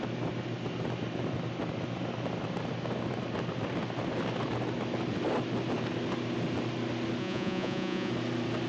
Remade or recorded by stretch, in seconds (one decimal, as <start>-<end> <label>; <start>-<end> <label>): 0.0-7.2 recorded; 7.2-8.1 remade; 8.1-8.7 recorded